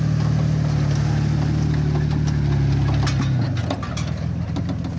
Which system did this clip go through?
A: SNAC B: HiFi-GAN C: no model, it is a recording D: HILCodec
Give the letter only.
C